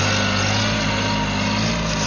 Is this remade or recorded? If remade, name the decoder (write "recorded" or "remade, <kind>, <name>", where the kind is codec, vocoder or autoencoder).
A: recorded